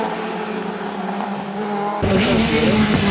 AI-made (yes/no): no